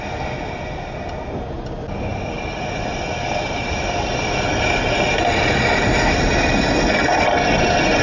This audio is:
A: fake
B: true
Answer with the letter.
B